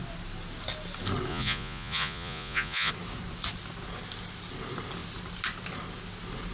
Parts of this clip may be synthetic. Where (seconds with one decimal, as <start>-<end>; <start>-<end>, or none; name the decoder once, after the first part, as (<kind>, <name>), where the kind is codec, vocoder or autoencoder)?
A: 1.3-2.9 (vocoder, Vocos)